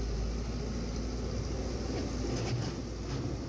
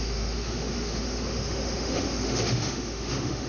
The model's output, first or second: second